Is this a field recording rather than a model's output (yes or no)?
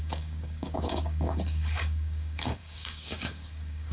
no